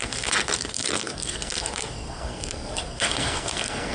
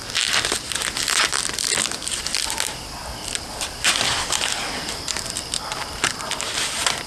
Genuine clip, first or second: second